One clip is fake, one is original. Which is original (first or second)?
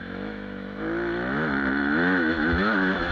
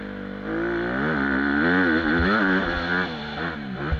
second